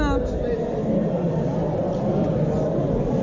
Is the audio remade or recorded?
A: recorded